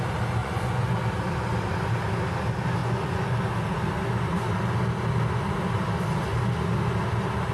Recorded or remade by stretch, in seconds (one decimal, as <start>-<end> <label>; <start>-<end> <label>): 0.0-0.4 recorded; 0.4-0.9 remade; 0.9-2.8 recorded; 2.8-3.4 remade; 3.4-7.5 recorded